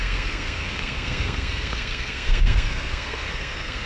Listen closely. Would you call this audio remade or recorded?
remade